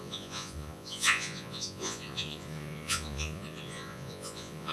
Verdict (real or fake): fake